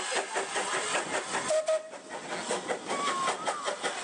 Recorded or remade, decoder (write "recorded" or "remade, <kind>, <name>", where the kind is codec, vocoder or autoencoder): recorded